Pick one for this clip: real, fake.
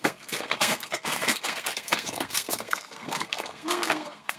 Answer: fake